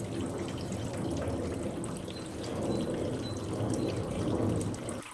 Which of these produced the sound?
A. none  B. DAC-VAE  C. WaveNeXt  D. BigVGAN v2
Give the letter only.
A